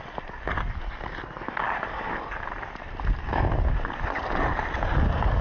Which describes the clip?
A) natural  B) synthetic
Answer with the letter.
A